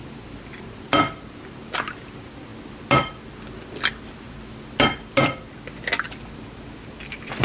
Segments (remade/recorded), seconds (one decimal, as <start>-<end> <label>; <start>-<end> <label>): 0.0-7.4 recorded